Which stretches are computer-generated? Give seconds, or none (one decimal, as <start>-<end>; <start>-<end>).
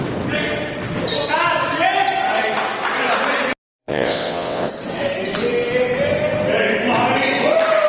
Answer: 3.8-4.7